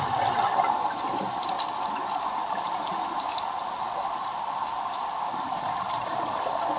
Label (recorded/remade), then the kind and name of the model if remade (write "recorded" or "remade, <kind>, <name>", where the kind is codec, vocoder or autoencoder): recorded